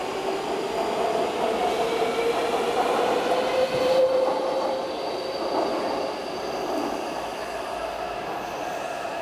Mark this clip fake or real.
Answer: real